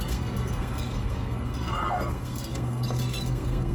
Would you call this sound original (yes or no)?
no